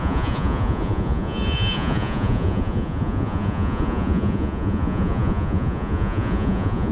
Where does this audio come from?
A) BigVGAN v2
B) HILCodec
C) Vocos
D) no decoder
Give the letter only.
C